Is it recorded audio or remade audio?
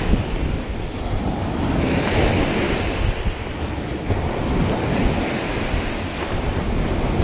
recorded